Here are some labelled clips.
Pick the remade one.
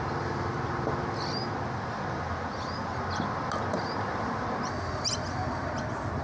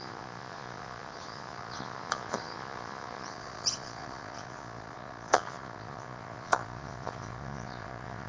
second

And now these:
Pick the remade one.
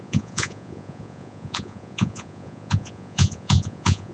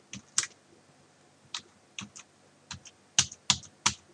first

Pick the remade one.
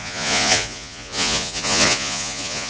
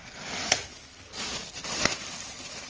first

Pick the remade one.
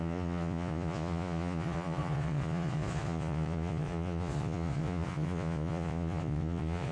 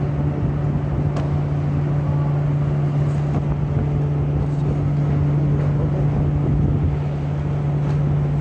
first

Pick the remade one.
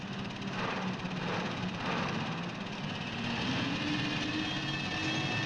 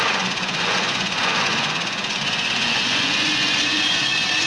second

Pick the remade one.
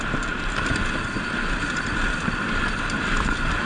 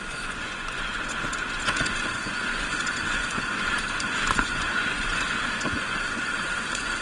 second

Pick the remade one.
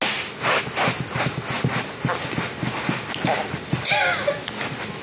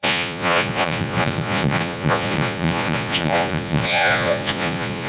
second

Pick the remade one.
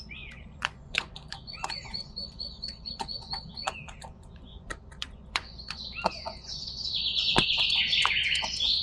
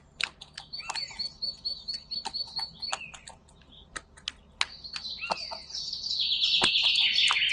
first